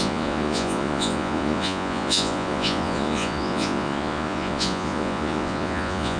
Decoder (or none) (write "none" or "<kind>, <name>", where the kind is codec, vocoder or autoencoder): vocoder, Vocos